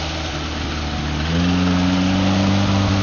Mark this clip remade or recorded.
recorded